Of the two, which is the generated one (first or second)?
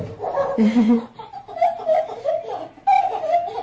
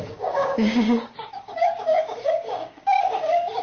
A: second